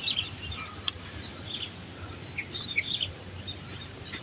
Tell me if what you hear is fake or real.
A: fake